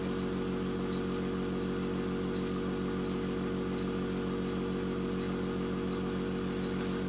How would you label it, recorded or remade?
recorded